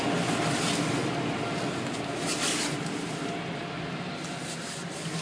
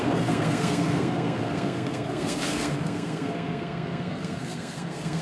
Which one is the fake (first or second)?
second